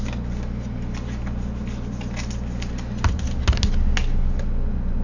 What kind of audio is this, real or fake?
real